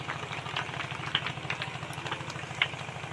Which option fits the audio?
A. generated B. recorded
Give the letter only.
B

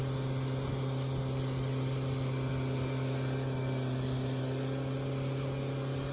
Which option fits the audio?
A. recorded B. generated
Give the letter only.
A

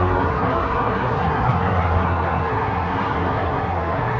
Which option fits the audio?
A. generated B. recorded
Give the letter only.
A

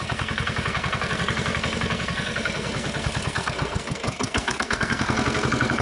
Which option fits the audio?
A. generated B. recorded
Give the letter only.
A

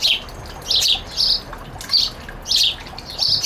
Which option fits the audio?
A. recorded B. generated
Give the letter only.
A